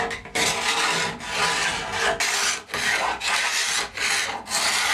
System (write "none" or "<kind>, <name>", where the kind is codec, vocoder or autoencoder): none